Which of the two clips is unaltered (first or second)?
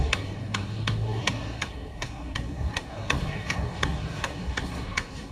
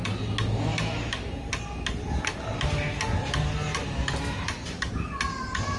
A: second